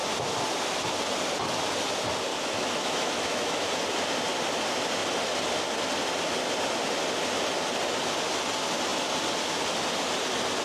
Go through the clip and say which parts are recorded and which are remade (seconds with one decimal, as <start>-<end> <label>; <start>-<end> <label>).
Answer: 0.0-2.3 recorded; 2.3-3.7 remade; 3.7-10.6 recorded

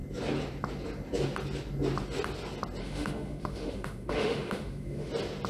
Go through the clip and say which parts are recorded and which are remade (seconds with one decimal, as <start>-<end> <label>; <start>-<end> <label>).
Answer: 0.0-2.8 recorded; 2.8-5.1 remade; 5.1-5.5 recorded

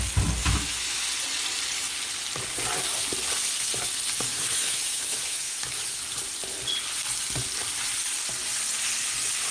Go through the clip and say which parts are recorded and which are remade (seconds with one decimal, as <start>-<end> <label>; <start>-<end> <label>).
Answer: 0.0-0.4 recorded; 0.4-1.1 remade; 1.1-4.3 recorded; 4.3-6.0 remade; 6.0-9.5 recorded

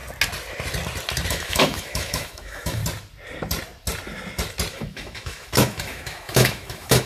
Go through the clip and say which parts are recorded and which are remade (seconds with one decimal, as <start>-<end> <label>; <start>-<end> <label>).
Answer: 0.0-1.3 recorded; 1.3-2.8 remade; 2.8-4.7 recorded; 4.7-7.1 remade